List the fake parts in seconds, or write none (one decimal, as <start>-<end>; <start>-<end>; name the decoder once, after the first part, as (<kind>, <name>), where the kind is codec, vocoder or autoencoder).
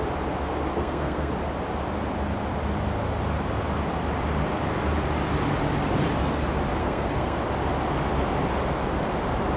0.8-1.3 (codec, SNAC); 6.8-7.4